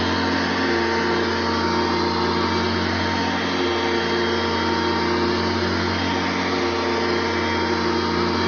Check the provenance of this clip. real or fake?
real